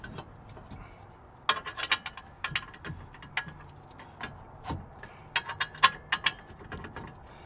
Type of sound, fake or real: real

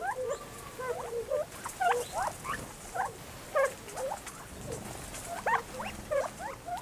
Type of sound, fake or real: real